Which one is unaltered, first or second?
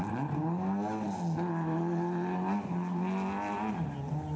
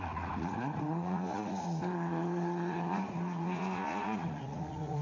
first